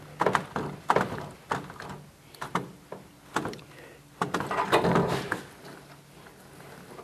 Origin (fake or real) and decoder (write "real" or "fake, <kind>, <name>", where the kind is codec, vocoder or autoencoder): real